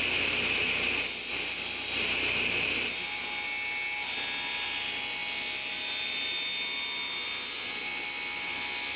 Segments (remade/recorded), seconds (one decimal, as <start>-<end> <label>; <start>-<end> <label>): 0.0-9.0 recorded